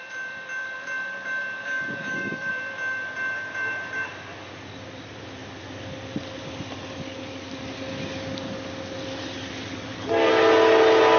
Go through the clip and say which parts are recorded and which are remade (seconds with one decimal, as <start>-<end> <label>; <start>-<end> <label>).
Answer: 0.0-1.6 recorded; 1.6-2.5 remade; 2.5-9.6 recorded; 9.6-10.3 remade; 10.3-11.2 recorded